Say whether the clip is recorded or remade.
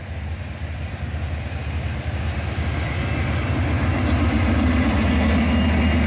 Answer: recorded